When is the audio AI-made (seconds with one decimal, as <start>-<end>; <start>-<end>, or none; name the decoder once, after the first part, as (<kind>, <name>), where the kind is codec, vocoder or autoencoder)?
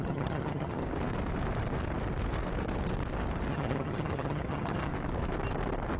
0.0-0.8 (vocoder, HiFi-GAN); 3.5-4.9